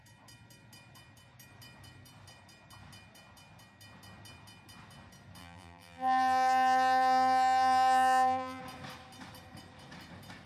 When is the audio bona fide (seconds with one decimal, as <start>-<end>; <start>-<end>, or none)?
0.0-5.4; 8.6-10.5